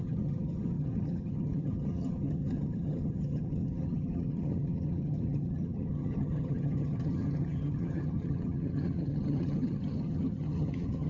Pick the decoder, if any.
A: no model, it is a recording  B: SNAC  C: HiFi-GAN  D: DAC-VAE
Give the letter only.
C